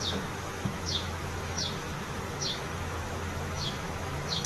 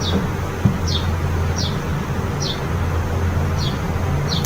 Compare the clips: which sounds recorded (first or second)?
second